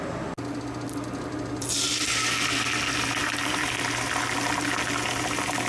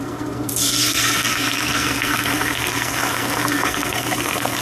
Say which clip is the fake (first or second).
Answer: second